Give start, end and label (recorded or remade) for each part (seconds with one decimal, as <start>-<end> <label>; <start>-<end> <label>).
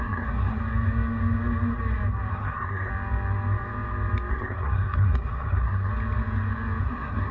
0.0-0.6 remade; 0.6-2.3 recorded; 2.3-2.9 remade; 2.9-4.3 recorded; 4.3-5.9 remade; 5.9-6.8 recorded; 6.8-7.3 remade